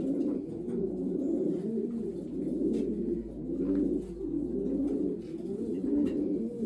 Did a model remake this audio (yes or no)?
no